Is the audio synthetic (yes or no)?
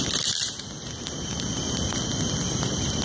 no